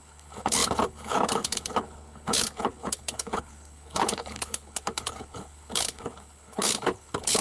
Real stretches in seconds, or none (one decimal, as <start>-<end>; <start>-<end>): none